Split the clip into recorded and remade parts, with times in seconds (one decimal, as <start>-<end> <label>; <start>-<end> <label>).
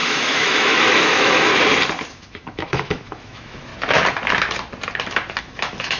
0.0-1.5 remade; 1.5-2.1 recorded; 2.1-3.7 remade; 3.7-5.4 recorded; 5.4-6.0 remade